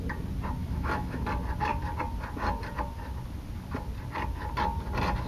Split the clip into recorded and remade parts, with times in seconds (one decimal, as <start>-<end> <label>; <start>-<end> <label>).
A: 0.0-0.6 recorded; 0.6-1.2 remade; 1.2-5.3 recorded